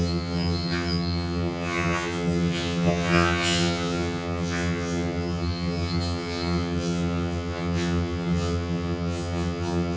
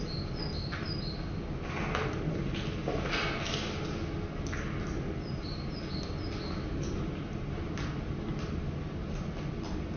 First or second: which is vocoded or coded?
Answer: first